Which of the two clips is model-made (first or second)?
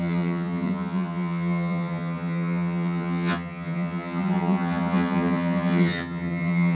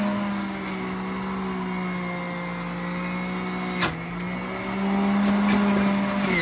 first